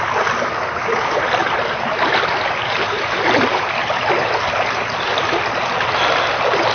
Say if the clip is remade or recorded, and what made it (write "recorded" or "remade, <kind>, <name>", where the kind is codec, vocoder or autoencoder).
recorded